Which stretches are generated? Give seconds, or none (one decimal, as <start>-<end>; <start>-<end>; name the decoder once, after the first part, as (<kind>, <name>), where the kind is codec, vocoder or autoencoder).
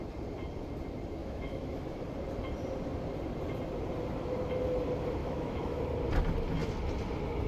1.2-2.0 (autoencoder, DAC-VAE); 5.2-5.8